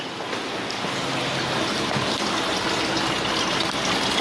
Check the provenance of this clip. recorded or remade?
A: recorded